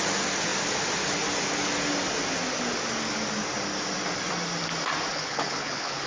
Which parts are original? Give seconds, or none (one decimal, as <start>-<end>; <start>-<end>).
0.0-5.1